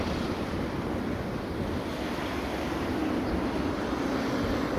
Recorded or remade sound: recorded